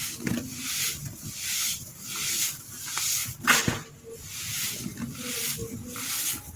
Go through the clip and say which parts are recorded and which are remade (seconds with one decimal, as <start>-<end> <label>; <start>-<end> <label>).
0.0-1.7 recorded; 1.7-2.8 remade; 2.8-3.2 recorded; 3.2-4.0 remade; 4.0-6.6 recorded